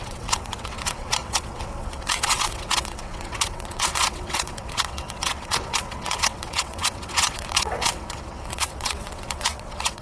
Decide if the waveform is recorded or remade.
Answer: remade